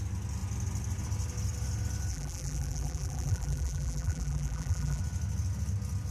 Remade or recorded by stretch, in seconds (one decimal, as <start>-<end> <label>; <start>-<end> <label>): 0.0-2.1 recorded; 2.1-5.0 remade; 5.0-6.1 recorded